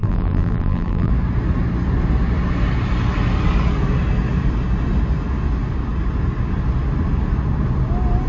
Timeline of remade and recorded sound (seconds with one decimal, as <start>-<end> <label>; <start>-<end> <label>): 0.0-1.1 remade; 1.1-8.3 recorded